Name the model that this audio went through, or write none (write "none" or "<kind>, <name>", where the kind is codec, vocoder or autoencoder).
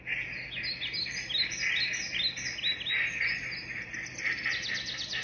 none